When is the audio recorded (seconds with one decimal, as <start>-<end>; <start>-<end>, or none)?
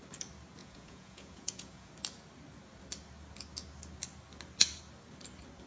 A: 0.0-0.6; 1.9-5.7